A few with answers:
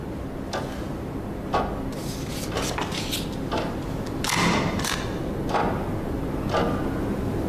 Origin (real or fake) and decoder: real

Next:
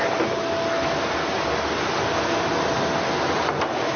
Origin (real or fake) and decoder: real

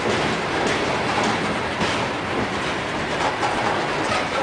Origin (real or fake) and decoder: real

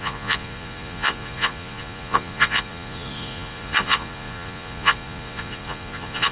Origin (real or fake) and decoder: fake, vocoder, Vocos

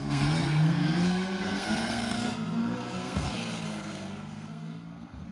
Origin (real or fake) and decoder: fake, codec, SNAC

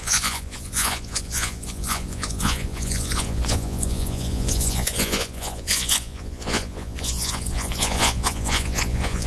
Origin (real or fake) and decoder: fake, vocoder, Vocos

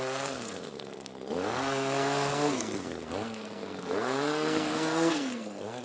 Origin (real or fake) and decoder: fake, codec, SNAC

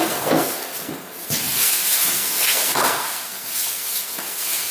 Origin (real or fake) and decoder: fake, codec, SNAC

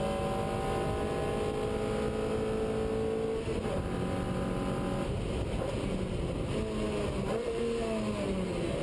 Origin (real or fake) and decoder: real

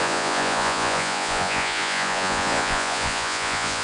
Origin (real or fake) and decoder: fake, vocoder, Vocos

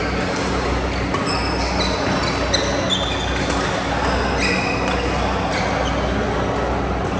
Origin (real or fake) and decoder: real